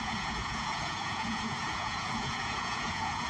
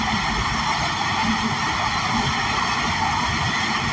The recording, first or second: second